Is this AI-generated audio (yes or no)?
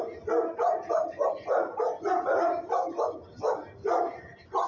no